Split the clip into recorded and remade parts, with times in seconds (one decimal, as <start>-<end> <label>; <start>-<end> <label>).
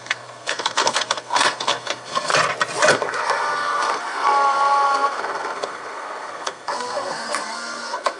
0.0-2.3 remade; 2.3-2.9 recorded; 2.9-8.2 remade